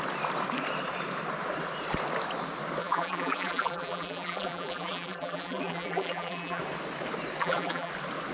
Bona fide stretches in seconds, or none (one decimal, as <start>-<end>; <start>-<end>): 0.0-2.8; 6.6-7.4; 7.9-8.3